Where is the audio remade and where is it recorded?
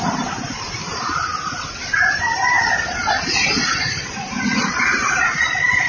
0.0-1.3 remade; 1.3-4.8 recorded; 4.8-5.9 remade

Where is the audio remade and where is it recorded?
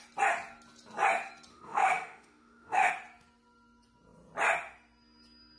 0.0-1.5 recorded; 1.5-2.9 remade; 2.9-5.6 recorded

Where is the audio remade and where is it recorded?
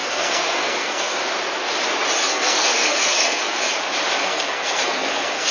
0.0-1.3 remade; 1.3-2.2 recorded; 2.2-3.7 remade; 3.7-4.2 recorded; 4.2-5.5 remade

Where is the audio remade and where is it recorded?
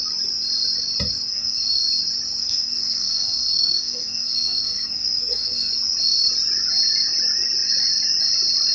0.0-1.3 recorded; 1.3-1.8 remade; 1.8-2.4 recorded; 2.4-5.7 remade; 5.7-8.7 recorded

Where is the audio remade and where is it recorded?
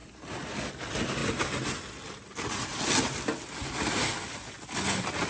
0.0-5.3 recorded